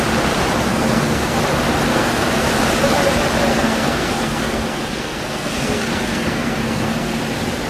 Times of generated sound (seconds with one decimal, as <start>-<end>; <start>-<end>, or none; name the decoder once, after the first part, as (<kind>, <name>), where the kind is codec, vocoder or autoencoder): 0.7-1.4 (codec, SNAC); 1.9-2.5; 3.5-7.2